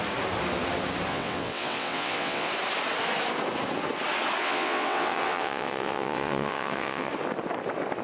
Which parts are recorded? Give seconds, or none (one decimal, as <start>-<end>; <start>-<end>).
0.0-1.1; 2.5-4.4; 7.1-8.0